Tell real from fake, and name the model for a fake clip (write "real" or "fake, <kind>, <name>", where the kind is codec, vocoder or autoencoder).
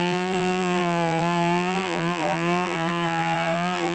fake, vocoder, BigVGAN v2